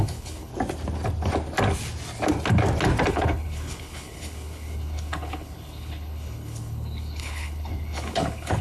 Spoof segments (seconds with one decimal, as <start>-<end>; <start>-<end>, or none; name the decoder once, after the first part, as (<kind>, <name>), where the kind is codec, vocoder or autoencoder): 0.0-0.5 (codec, HILCodec); 3.1-8.6